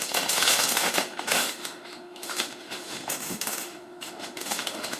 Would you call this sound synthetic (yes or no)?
yes